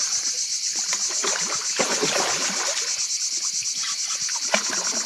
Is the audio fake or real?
real